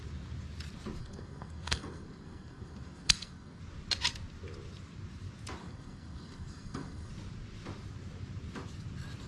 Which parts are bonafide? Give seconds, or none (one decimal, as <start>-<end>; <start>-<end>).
0.0-1.0; 3.6-5.6; 7.1-9.3

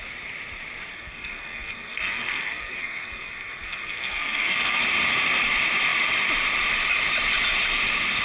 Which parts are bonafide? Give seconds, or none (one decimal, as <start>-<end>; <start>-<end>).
0.0-0.9; 4.8-8.2

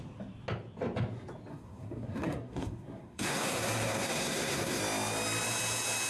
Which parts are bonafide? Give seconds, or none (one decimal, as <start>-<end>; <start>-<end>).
0.0-1.5; 4.8-6.1

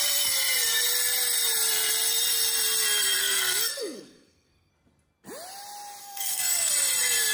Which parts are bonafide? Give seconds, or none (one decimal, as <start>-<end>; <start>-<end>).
0.0-3.2; 4.7-6.0; 6.7-7.3